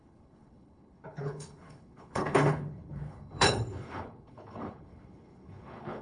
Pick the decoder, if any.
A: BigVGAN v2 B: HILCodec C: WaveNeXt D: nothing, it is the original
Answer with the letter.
B